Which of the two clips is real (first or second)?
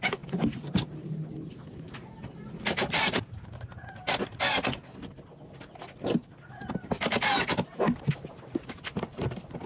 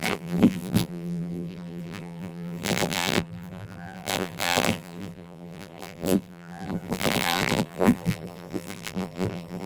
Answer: first